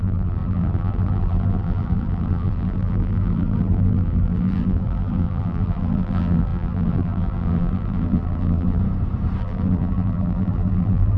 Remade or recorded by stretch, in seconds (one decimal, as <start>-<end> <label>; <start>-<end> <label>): 0.0-8.8 remade; 8.8-9.4 recorded; 9.4-11.2 remade

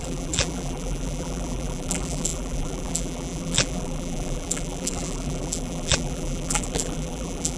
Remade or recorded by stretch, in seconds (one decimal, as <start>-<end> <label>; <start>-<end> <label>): 0.0-7.6 remade

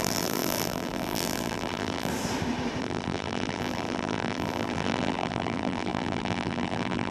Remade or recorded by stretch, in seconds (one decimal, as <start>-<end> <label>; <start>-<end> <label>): 0.0-2.1 remade; 2.1-2.8 recorded; 2.8-7.1 remade

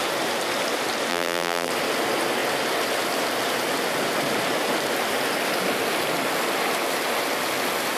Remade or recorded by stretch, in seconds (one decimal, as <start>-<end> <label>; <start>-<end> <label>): 0.0-1.1 recorded; 1.1-1.7 remade; 1.7-8.0 recorded

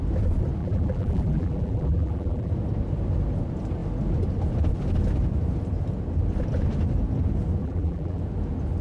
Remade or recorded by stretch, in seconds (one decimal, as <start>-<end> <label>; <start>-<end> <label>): 0.0-0.6 recorded; 0.6-2.5 remade; 2.5-7.6 recorded; 7.6-8.2 remade; 8.2-8.8 recorded

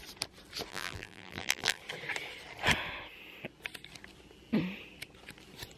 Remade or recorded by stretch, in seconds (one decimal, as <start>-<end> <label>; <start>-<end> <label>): 0.0-0.7 recorded; 0.7-1.8 remade; 1.8-5.8 recorded